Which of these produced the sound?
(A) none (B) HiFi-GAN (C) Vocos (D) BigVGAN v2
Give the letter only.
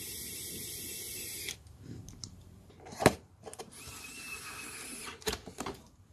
D